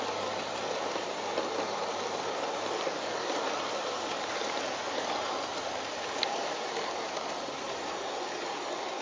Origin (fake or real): real